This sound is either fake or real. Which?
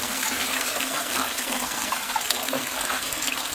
fake